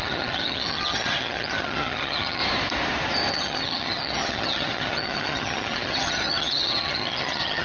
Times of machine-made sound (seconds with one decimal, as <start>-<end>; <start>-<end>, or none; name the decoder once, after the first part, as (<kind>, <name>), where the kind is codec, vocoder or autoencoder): 0.0-2.4 (vocoder, HiFi-GAN); 3.3-7.6